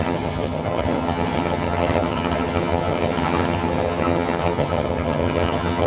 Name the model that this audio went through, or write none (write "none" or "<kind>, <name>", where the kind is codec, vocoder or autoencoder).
vocoder, HiFi-GAN